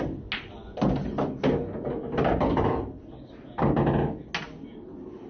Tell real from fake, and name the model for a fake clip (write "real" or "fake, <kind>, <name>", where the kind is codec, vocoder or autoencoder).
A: real